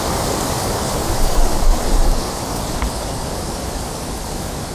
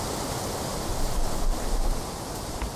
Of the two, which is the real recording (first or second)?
second